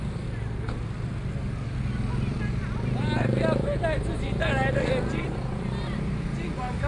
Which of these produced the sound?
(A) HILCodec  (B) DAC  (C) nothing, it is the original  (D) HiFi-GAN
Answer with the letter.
C